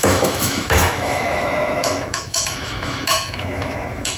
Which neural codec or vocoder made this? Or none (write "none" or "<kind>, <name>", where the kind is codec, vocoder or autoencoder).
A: autoencoder, DAC-VAE